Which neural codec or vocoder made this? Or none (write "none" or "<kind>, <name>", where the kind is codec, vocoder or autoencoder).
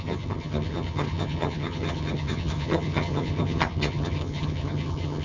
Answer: vocoder, HiFi-GAN